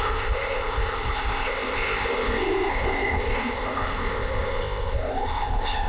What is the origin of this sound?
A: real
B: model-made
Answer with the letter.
B